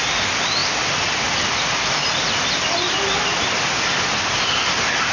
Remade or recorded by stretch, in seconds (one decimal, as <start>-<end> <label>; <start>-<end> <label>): 0.0-0.6 recorded; 0.6-2.1 remade; 2.1-3.3 recorded; 3.3-4.6 remade; 4.6-5.1 recorded